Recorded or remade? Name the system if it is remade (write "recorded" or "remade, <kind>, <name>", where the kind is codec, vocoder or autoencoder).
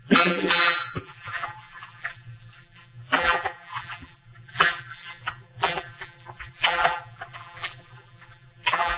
remade, vocoder, BigVGAN v2